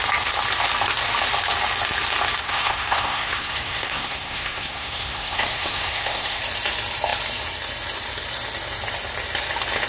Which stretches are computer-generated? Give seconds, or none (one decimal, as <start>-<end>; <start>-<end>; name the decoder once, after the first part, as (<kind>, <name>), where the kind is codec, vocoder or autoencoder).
2.4-6.4 (codec, SNAC)